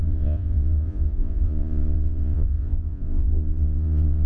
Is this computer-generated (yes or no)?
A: yes